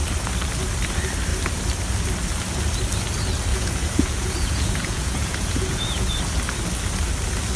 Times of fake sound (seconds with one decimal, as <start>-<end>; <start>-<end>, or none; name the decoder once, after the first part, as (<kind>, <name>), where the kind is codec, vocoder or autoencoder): 3.5-6.2 (vocoder, Vocos)